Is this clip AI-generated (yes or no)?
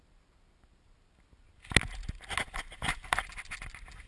no